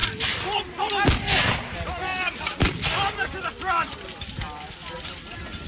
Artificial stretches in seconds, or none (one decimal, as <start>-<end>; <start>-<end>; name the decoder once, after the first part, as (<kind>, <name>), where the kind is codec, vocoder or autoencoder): none